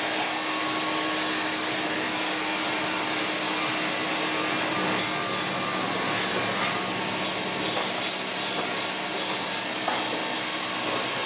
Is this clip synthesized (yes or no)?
no